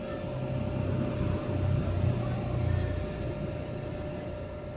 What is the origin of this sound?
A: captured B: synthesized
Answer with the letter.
A